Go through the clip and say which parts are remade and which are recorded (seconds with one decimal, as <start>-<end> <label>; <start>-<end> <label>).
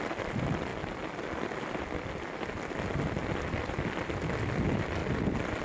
0.0-5.6 recorded